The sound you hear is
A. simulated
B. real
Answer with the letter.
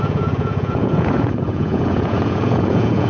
A